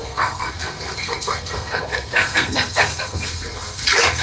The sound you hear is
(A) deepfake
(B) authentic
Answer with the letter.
A